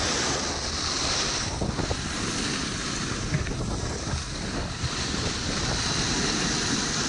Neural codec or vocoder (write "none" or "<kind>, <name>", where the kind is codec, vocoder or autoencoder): none